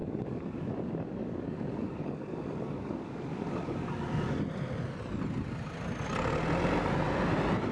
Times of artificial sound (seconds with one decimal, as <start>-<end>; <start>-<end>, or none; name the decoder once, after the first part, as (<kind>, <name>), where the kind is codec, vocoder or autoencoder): 0.0-4.4 (codec, DAC)